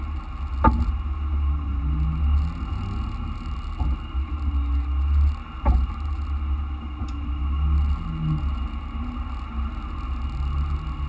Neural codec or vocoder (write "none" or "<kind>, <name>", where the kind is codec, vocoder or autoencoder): none